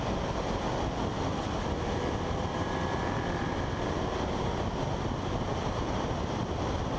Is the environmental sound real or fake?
real